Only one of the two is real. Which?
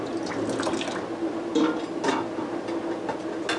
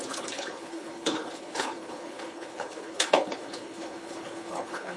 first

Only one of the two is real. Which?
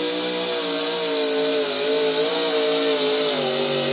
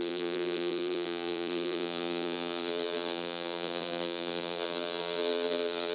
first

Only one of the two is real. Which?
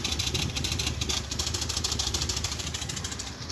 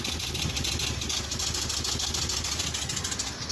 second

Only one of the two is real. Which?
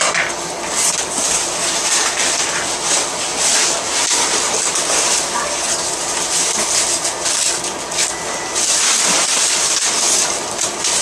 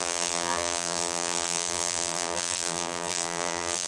first